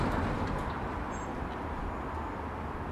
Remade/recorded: recorded